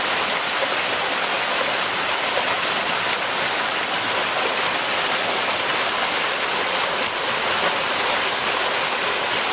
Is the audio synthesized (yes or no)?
no